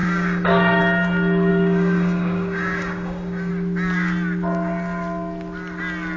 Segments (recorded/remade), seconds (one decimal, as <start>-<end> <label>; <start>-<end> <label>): 0.0-0.8 remade; 0.8-1.5 recorded; 1.5-3.5 remade; 3.5-6.2 recorded